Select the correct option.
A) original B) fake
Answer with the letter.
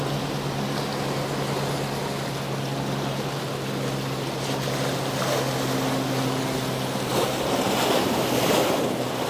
A